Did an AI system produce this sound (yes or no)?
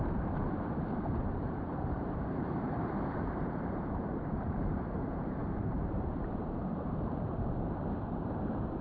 yes